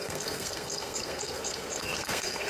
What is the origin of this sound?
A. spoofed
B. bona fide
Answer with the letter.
A